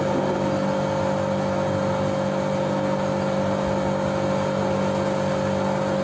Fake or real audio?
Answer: real